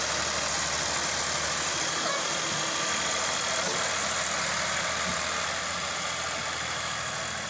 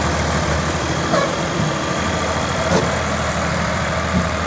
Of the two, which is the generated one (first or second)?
second